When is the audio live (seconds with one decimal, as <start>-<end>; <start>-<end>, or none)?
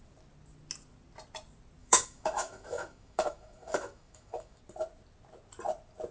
0.0-1.8; 4.6-6.1